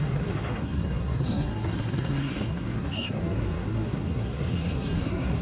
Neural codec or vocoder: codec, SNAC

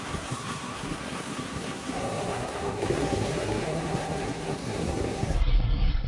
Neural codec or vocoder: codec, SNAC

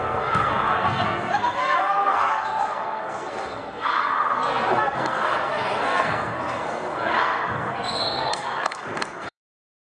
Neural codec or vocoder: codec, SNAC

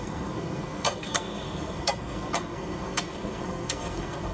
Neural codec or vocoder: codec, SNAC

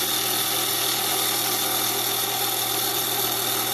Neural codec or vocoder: none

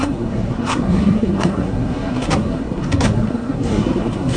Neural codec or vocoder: codec, SNAC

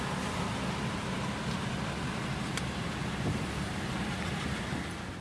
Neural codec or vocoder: none